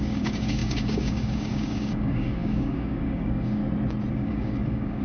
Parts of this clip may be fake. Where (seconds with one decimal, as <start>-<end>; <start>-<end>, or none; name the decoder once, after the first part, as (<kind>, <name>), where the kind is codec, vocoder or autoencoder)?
0.0-3.6 (codec, DAC); 4.1-5.0